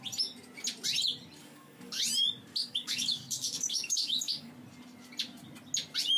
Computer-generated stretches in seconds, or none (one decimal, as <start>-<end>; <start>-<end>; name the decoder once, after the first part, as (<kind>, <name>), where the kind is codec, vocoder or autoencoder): 1.4-2.0 (codec, DAC); 2.6-4.5